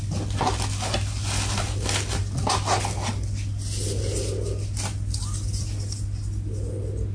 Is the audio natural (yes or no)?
yes